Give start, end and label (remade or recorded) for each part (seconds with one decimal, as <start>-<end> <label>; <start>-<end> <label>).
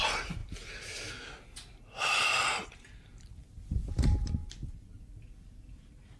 0.0-3.8 recorded; 3.8-4.5 remade; 4.5-6.2 recorded